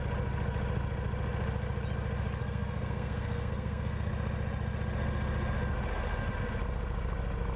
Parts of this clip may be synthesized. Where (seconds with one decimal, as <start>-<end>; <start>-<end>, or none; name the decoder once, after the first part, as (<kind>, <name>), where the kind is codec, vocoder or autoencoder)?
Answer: 2.4-4.1 (codec, SNAC)